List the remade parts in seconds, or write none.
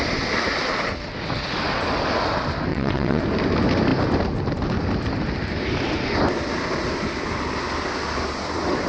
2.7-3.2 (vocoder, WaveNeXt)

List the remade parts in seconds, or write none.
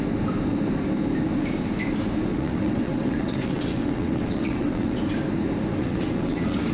2.3-5.0 (vocoder, WaveNeXt); 5.8-6.7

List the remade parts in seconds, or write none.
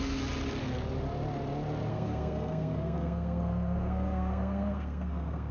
1.9-5.5 (codec, SNAC)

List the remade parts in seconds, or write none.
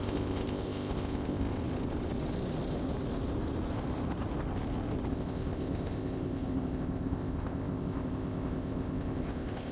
0.0-1.5 (codec, ZipCodec); 5.1-9.7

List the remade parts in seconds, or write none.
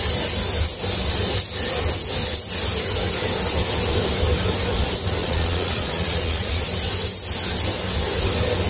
5.2-6.6 (vocoder, Vocos)